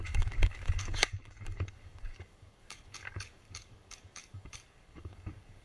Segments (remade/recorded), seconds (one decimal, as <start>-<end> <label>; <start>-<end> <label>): 0.0-5.6 remade